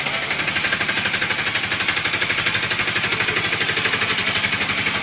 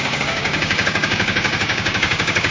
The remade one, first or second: second